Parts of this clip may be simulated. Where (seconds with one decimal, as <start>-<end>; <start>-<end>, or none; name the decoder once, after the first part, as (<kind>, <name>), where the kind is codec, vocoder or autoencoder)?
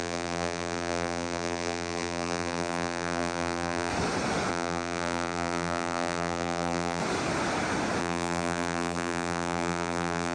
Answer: 0.0-3.9 (vocoder, BigVGAN v2); 4.5-7.0; 8.0-10.3